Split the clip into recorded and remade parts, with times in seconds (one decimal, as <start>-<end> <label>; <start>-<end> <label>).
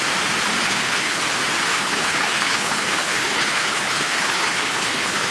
0.0-0.6 recorded; 0.6-1.2 remade; 1.2-1.7 recorded; 1.7-5.3 remade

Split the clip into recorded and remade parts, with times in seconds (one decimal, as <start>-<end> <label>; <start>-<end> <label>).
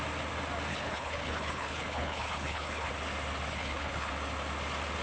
0.0-0.7 recorded; 0.7-2.9 remade; 2.9-3.5 recorded; 3.5-4.1 remade; 4.1-5.0 recorded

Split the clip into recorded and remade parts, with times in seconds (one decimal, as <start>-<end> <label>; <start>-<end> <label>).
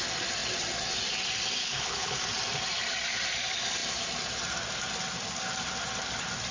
0.0-1.6 recorded; 1.6-2.2 remade; 2.2-6.5 recorded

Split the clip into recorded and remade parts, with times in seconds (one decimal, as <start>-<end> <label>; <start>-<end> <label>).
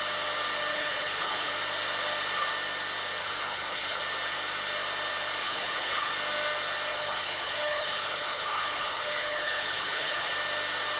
0.0-0.7 recorded; 0.7-1.5 remade; 1.5-3.2 recorded; 3.2-4.0 remade; 4.0-5.4 recorded; 5.4-6.1 remade; 6.1-6.9 recorded; 6.9-10.3 remade; 10.3-11.0 recorded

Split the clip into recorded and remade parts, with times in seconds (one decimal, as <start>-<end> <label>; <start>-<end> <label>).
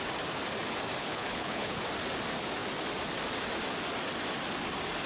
0.0-1.0 recorded; 1.0-1.8 remade; 1.8-5.1 recorded